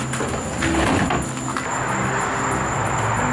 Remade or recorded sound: recorded